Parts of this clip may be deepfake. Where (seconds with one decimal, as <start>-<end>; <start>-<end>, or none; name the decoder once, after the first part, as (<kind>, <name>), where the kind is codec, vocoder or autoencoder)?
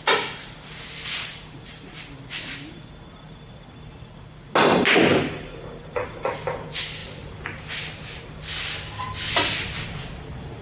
none